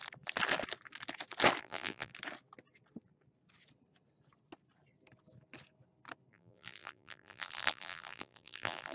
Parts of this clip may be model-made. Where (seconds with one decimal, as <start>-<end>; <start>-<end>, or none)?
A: 1.6-2.1; 6.3-8.9